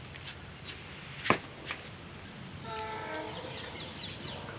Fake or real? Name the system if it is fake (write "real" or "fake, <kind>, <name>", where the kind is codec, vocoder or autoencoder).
real